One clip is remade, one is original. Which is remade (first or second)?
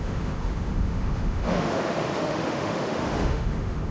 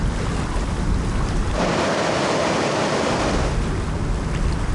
first